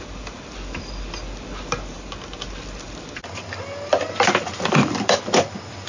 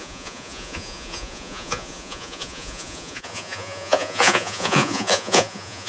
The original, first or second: first